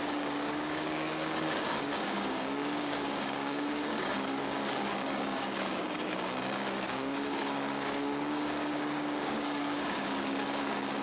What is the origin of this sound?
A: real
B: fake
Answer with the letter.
B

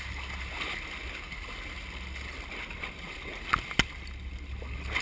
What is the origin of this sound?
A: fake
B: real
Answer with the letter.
B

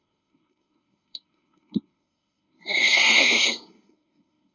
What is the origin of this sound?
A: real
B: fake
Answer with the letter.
B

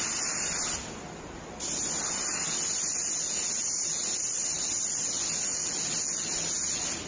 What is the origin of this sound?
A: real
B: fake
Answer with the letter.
A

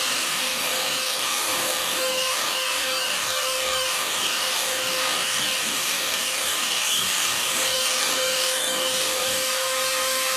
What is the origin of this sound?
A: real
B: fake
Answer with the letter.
B